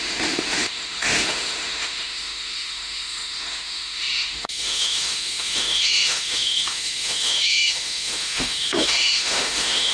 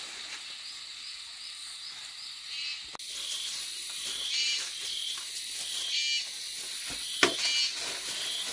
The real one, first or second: second